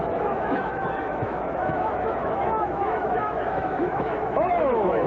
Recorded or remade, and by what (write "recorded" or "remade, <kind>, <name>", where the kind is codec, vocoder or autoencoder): remade, autoencoder, DAC-VAE